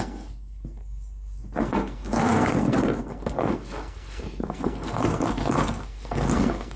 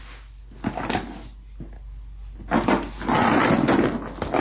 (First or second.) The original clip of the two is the second